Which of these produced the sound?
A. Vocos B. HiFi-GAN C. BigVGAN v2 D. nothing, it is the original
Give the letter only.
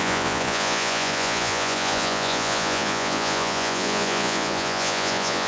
A